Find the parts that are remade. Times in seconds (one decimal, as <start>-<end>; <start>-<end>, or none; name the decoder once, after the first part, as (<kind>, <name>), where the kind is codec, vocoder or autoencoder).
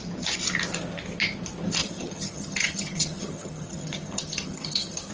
1.8-5.1 (vocoder, HiFi-GAN)